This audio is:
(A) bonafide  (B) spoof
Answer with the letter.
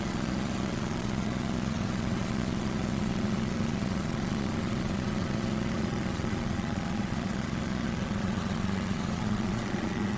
B